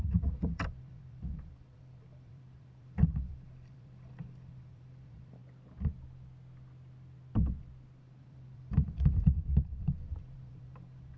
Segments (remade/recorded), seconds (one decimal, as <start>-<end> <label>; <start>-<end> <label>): 0.0-5.4 remade; 5.4-8.0 recorded; 8.0-11.2 remade